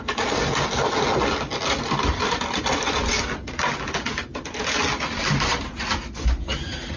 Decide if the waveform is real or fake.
real